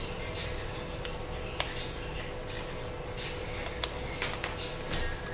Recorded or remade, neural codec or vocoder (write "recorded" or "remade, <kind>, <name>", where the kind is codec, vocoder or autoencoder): recorded